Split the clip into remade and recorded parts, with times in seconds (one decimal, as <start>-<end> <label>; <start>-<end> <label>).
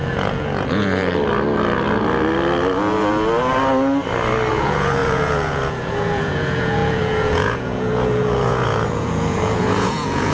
0.0-1.0 remade; 1.0-4.5 recorded; 4.5-10.3 remade